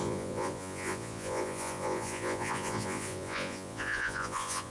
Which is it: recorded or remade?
remade